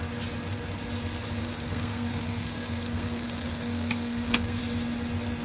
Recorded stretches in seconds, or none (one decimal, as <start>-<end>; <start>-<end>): 0.0-1.4; 4.6-5.4